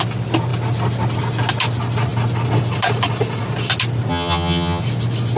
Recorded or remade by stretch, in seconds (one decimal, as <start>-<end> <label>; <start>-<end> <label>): 0.0-4.1 recorded; 4.1-4.8 remade; 4.8-5.4 recorded